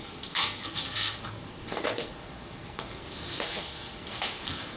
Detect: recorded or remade remade